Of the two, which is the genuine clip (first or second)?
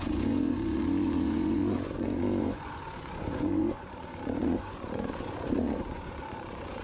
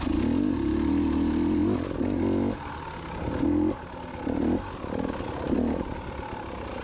second